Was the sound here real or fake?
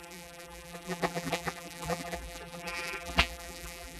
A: fake